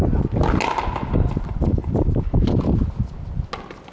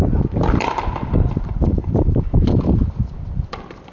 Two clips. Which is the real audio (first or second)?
first